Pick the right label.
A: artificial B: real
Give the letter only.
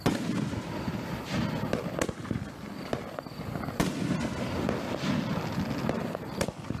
B